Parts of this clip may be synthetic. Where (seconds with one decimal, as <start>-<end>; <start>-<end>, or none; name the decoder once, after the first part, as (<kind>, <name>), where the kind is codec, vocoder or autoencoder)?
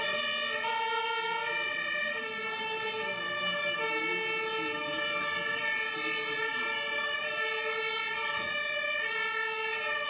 none